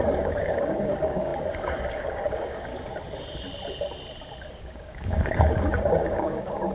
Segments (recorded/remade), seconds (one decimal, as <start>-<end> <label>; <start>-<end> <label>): 0.0-2.7 remade; 2.7-4.5 recorded; 4.5-6.7 remade